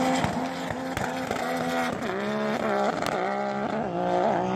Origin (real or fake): real